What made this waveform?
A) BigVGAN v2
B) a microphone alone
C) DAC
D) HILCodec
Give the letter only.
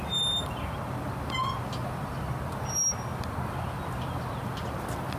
B